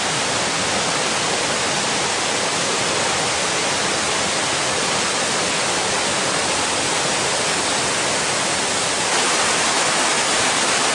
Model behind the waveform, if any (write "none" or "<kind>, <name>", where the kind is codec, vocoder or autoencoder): none